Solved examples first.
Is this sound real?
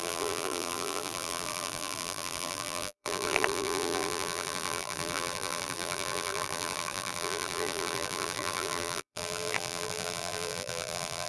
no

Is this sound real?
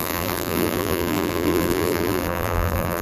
no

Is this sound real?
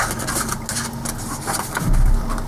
yes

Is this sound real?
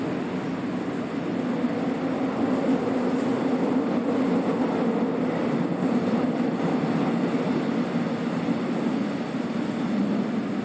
yes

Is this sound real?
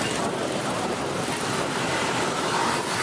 no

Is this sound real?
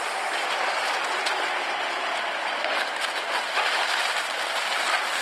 no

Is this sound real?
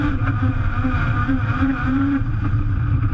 no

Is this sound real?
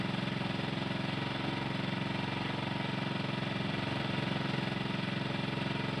yes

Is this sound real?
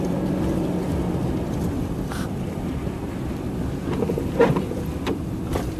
no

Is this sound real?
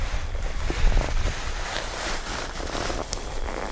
yes